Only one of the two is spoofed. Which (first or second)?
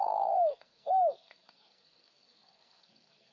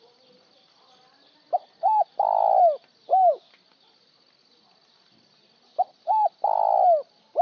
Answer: first